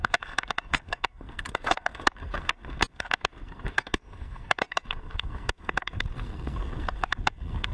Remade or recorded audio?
remade